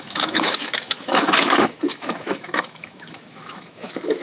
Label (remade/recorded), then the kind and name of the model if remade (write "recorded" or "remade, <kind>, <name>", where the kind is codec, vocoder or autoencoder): remade, autoencoder, DAC-VAE